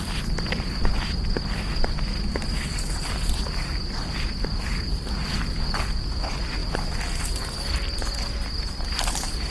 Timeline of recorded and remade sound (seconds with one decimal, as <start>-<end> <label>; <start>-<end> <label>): 0.0-9.5 recorded